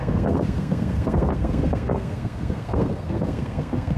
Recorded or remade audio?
remade